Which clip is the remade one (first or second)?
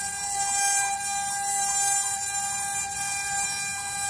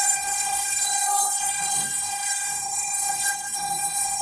second